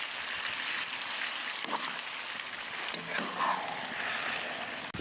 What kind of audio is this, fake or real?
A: real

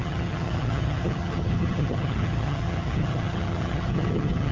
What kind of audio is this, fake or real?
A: fake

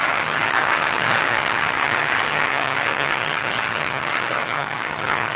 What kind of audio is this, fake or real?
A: fake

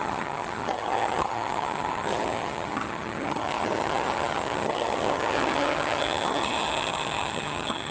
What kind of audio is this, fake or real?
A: fake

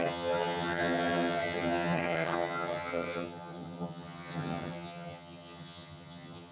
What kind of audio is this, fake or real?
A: fake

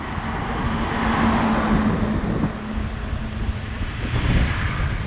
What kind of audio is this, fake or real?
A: real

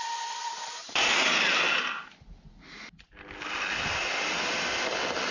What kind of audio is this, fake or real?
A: real